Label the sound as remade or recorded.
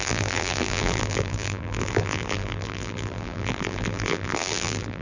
remade